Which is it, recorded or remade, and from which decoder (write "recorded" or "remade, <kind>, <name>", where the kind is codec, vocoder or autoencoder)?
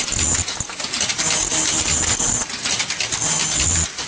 recorded